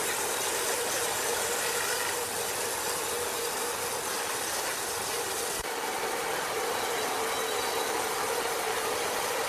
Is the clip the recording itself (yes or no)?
yes